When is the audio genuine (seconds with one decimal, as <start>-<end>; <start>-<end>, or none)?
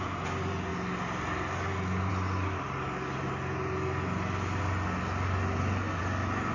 0.0-6.5